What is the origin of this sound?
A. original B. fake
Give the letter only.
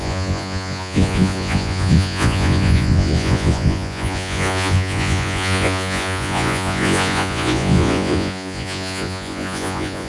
B